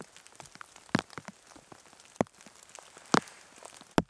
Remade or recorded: recorded